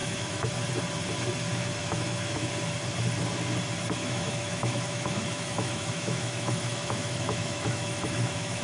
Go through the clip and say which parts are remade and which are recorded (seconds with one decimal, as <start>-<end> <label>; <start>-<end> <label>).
0.0-0.5 remade; 0.5-1.8 recorded; 1.8-2.5 remade; 2.5-4.0 recorded; 4.0-8.6 remade